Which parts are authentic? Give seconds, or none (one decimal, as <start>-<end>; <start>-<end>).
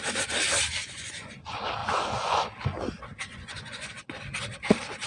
0.0-0.8; 1.3-1.8; 2.4-3.3; 3.9-5.1